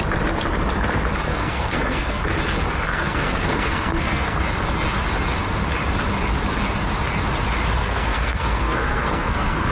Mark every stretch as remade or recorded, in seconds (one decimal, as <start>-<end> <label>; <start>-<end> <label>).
0.0-1.3 recorded; 1.3-2.2 remade; 2.2-2.9 recorded; 2.9-4.4 remade; 4.4-7.8 recorded; 7.8-9.7 remade